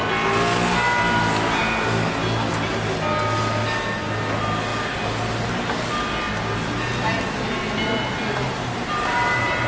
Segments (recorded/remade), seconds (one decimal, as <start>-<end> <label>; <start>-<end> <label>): 0.0-8.6 recorded; 8.6-9.7 remade